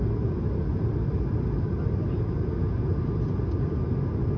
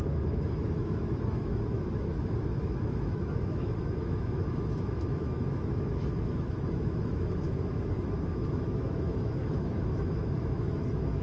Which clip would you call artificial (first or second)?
second